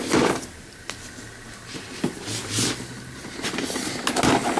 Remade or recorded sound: recorded